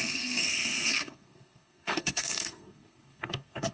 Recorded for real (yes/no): no